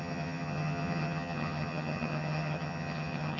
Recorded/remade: remade